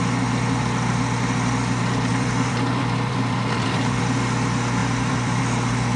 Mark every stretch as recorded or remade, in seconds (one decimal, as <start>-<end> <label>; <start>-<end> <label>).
0.0-2.1 recorded; 2.1-4.0 remade; 4.0-4.8 recorded; 4.8-5.4 remade; 5.4-6.0 recorded